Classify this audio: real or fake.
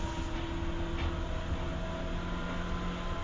real